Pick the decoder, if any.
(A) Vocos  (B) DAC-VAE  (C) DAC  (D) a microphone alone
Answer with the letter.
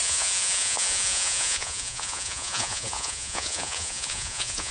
A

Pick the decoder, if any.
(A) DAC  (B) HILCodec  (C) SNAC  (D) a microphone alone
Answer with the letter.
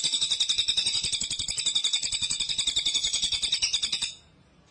D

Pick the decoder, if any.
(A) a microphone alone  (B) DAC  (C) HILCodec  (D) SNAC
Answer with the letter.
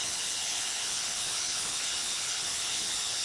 C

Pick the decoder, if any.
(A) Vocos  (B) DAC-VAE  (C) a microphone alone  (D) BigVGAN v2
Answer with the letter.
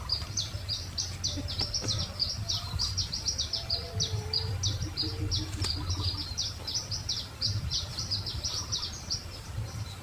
D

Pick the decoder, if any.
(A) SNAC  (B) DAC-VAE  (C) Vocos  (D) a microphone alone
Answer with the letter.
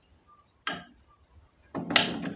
D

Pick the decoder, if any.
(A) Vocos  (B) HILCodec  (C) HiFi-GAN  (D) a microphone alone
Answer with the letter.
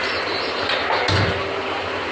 D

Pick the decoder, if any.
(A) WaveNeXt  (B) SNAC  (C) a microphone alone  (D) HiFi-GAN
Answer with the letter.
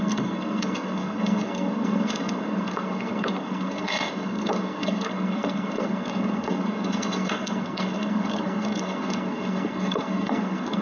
B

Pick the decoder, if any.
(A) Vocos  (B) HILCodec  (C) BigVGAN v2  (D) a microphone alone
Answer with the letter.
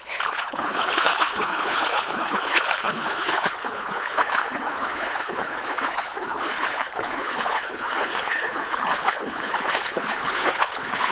B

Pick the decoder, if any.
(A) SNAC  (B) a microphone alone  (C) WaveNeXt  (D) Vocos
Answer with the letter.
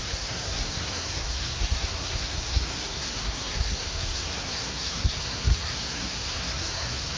A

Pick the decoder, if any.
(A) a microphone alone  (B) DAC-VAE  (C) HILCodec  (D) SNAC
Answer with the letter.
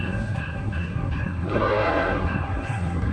D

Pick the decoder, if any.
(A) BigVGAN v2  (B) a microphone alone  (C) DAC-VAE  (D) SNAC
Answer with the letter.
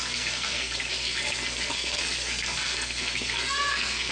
D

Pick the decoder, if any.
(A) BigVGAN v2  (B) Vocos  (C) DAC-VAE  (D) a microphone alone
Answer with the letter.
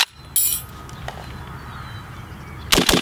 D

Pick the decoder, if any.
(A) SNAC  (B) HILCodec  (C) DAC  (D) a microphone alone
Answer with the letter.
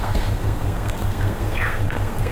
A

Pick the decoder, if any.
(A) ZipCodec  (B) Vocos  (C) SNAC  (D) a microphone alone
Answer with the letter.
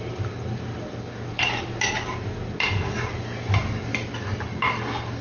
D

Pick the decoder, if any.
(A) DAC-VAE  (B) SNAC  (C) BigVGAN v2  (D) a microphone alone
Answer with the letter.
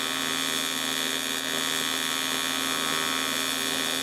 D